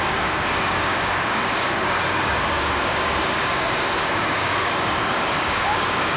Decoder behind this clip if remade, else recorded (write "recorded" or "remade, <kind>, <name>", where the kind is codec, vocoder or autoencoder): remade, codec, DAC